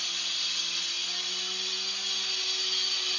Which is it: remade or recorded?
recorded